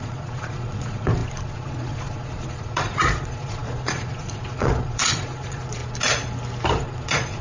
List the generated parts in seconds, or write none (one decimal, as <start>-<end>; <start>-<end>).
0.0-5.8; 6.7-7.4